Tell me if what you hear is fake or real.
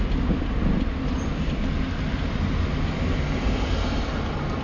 real